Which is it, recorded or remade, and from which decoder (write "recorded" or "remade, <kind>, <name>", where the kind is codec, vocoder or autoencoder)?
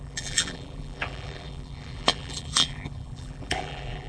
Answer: remade, vocoder, BigVGAN v2